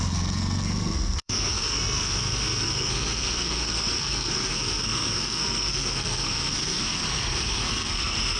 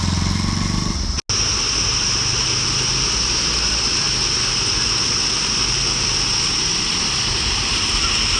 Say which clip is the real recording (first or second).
second